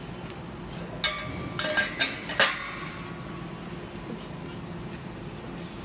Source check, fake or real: real